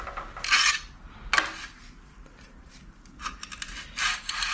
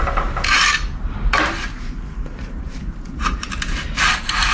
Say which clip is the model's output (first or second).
second